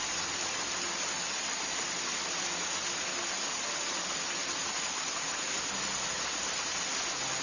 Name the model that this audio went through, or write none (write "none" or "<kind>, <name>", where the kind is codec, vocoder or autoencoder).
none